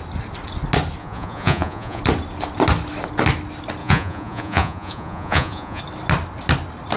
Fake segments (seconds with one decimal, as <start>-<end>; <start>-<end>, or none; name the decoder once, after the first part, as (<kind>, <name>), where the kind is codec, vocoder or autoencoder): 1.0-2.0 (vocoder, Vocos); 3.8-5.8